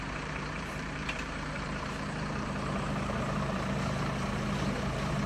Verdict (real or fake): fake